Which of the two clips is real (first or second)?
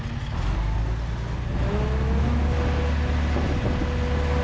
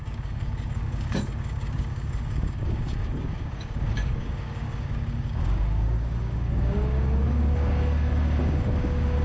first